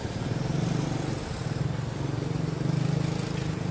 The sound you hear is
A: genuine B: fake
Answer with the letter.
A